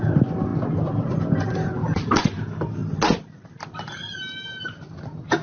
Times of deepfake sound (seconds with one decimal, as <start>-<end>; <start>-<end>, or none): none